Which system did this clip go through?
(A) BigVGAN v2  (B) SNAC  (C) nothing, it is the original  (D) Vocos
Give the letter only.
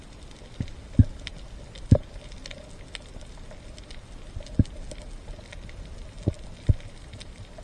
C